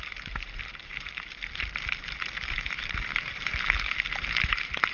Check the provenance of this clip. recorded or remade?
remade